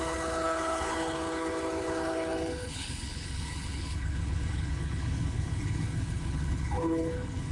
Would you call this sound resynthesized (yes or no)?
yes